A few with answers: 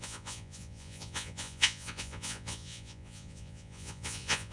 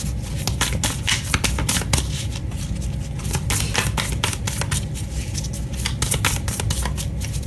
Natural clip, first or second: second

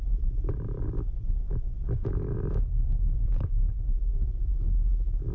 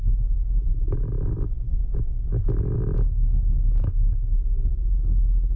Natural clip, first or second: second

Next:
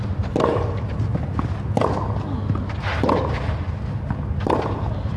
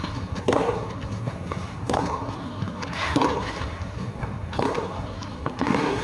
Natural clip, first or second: first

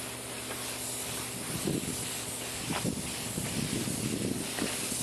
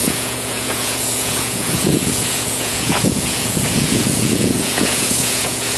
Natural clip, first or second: first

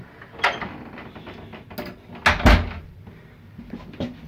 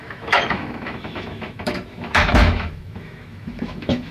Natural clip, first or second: first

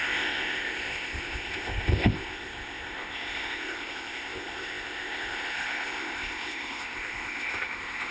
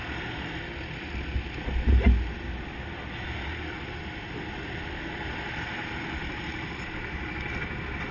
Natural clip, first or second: second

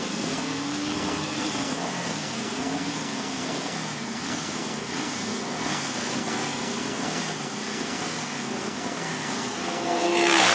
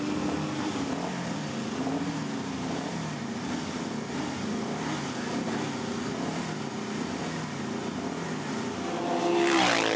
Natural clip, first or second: second